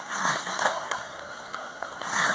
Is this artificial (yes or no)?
yes